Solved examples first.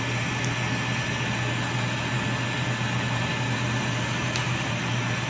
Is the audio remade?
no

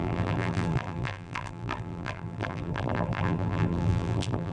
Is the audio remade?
yes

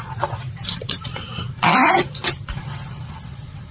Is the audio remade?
yes